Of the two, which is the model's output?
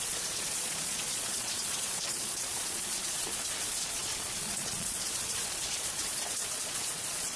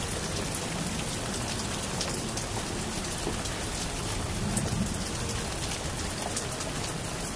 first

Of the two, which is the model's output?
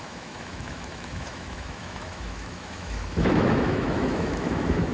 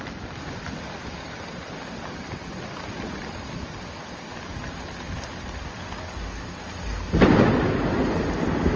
first